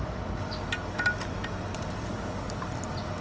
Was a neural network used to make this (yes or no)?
no